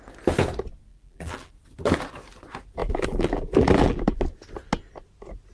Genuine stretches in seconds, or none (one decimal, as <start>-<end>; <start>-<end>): 0.0-0.9; 1.5-2.8; 4.2-5.5